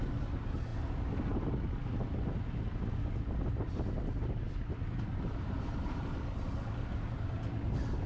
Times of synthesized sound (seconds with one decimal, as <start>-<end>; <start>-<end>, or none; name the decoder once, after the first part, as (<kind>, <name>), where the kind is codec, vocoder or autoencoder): none